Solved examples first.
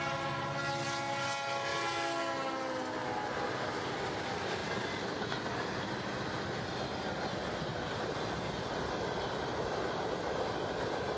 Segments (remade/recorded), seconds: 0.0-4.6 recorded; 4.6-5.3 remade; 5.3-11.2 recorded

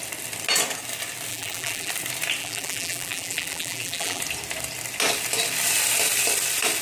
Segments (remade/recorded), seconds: 0.0-1.3 recorded; 1.3-1.9 remade; 1.9-2.4 recorded; 2.4-4.2 remade; 4.2-6.8 recorded

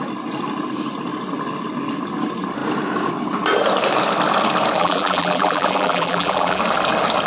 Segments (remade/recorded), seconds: 0.0-4.8 recorded; 4.8-6.6 remade; 6.6-7.3 recorded

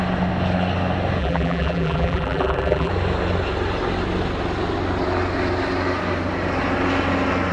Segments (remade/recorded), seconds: 0.0-1.2 recorded; 1.2-2.9 remade; 2.9-7.5 recorded

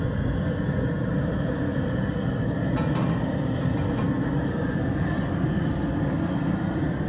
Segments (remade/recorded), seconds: 0.0-7.1 recorded

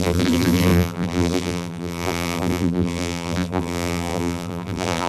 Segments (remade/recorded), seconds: 0.0-5.1 remade

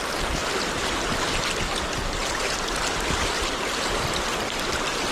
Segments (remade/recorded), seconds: 0.0-5.1 recorded

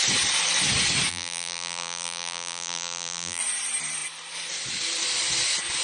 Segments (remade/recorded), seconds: 0.0-1.1 recorded; 1.1-3.4 remade; 3.4-5.8 recorded